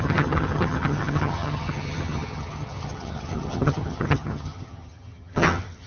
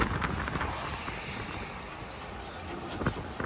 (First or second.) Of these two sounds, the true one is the second